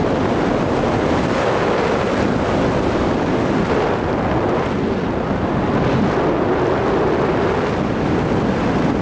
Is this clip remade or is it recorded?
recorded